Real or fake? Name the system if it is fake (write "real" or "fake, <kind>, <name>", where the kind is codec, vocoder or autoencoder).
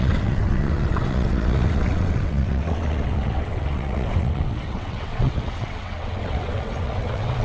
fake, vocoder, WaveNeXt